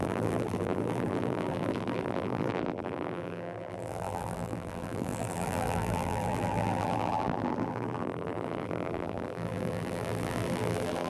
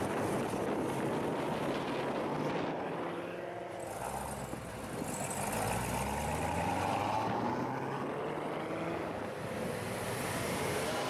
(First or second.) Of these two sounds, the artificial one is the first